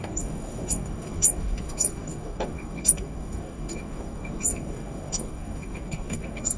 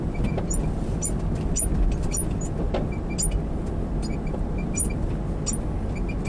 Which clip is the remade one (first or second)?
first